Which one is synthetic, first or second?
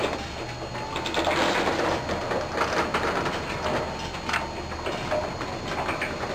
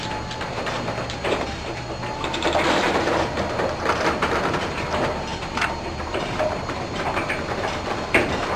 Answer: second